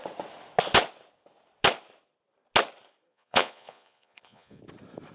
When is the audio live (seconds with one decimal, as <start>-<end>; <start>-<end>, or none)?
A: 0.0-3.1; 4.6-5.1